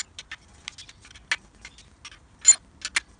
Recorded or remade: recorded